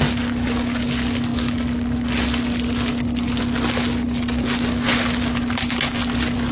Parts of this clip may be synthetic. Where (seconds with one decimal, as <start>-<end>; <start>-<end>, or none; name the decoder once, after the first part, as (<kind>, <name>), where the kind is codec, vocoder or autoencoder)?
none